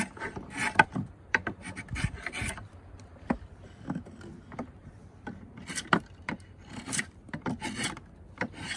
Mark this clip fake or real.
fake